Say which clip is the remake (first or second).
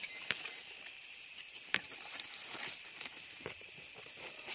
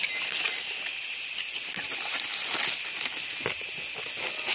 first